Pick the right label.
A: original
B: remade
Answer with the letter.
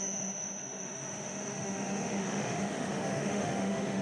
B